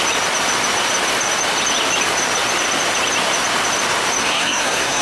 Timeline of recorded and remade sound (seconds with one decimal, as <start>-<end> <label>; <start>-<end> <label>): 0.0-4.2 recorded; 4.2-5.0 remade